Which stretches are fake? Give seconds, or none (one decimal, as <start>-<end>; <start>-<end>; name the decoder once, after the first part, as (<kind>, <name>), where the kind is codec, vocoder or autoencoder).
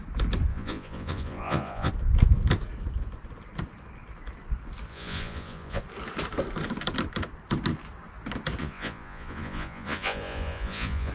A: 0.5-1.9 (vocoder, Vocos); 4.9-5.8; 8.6-11.1